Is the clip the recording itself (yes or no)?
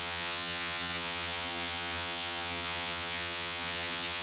no